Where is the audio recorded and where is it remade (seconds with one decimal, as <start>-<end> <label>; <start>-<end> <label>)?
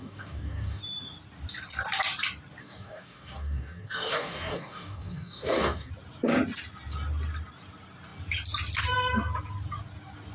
0.0-0.8 remade; 0.8-2.6 recorded; 2.6-5.9 remade; 5.9-10.3 recorded